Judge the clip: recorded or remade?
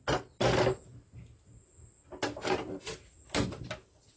recorded